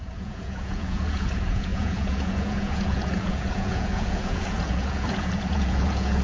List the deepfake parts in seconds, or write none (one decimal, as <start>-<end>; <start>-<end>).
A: 0.0-6.2